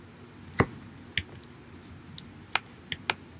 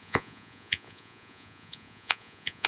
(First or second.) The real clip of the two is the first